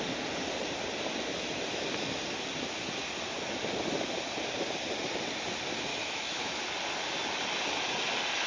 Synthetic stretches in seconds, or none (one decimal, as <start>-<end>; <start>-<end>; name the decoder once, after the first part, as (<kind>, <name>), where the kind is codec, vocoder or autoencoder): 5.9-6.6 (autoencoder, DAC-VAE)